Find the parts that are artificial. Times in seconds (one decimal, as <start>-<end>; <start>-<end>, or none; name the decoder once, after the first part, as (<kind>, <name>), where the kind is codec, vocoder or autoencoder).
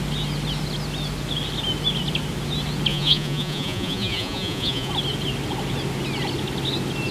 2.9-4.9 (vocoder, Vocos)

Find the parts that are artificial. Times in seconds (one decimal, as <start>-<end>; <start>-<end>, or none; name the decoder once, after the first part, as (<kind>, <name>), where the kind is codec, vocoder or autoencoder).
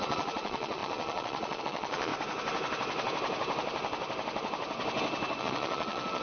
0.0-2.1 (vocoder, Vocos); 5.4-6.2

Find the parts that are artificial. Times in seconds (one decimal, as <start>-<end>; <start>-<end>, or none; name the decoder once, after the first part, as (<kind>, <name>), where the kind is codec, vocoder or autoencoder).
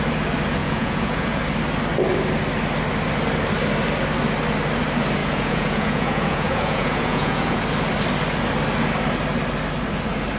0.6-1.4 (vocoder, Vocos); 5.2-7.6